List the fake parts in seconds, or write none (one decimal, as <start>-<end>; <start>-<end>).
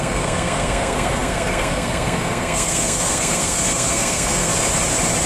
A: 0.0-4.5